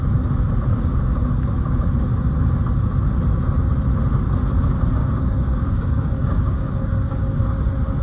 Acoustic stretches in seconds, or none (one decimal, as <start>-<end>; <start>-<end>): 0.0-0.7; 1.3-5.0; 7.4-8.0

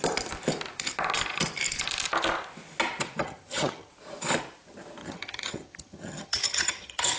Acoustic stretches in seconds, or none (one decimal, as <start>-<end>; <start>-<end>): 0.0-3.2; 3.9-5.0

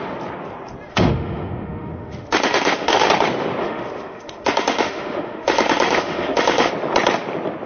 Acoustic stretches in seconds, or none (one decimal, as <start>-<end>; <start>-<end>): 0.0-0.9; 3.1-3.6; 6.7-7.7

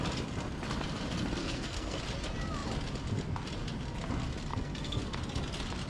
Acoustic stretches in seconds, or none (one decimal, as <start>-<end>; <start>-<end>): 0.0-1.4; 2.0-4.5; 5.2-5.9